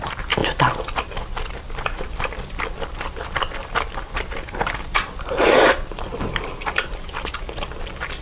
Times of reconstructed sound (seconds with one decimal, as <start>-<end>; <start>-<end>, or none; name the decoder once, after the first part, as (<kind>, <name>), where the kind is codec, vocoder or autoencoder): 0.0-8.2 (vocoder, BigVGAN v2)